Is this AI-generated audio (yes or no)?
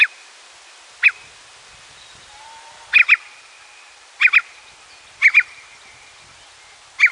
no